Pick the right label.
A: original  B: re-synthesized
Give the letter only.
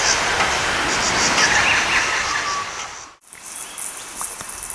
A